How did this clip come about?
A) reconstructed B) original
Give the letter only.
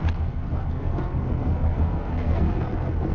A